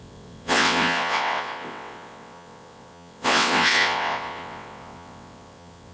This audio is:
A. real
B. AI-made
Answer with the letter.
B